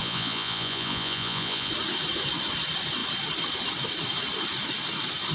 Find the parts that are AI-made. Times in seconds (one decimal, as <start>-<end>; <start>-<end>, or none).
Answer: 0.0-1.7